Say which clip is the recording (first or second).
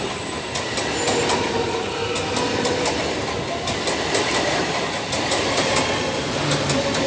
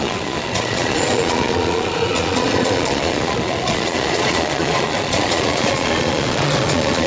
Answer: first